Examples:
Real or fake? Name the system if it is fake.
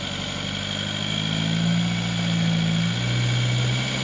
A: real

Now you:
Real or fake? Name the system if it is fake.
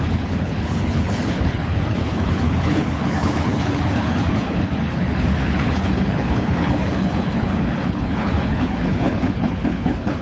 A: fake, codec, HILCodec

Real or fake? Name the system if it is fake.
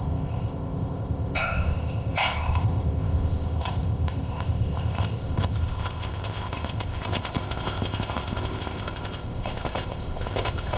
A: fake, codec, ZipCodec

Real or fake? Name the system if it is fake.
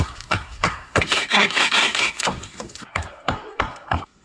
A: fake, codec, SNAC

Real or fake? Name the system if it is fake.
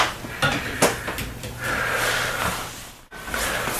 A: real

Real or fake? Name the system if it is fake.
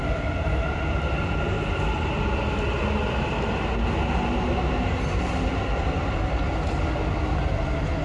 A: real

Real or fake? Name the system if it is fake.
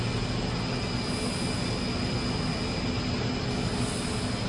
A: real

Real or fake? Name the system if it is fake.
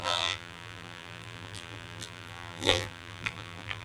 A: fake, vocoder, BigVGAN v2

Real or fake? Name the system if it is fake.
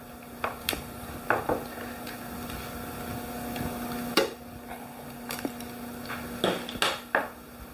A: real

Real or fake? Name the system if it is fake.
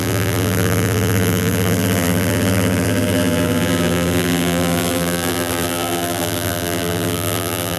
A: fake, vocoder, BigVGAN v2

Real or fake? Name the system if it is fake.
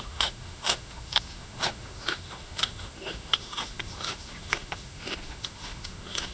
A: fake, autoencoder, DAC-VAE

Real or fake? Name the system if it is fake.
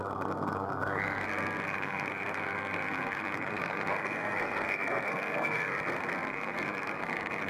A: fake, codec, SNAC